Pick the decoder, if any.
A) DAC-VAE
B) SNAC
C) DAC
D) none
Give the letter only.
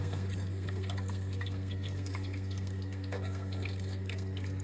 B